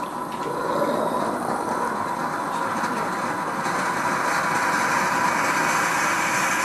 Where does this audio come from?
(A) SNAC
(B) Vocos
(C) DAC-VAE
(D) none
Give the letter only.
D